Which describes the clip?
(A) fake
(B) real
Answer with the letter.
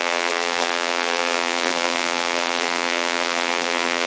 A